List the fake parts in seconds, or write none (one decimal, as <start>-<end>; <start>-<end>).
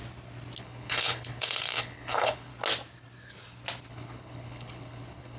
0.6-2.5; 3.9-5.4